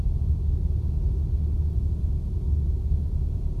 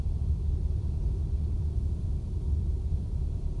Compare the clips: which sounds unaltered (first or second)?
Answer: first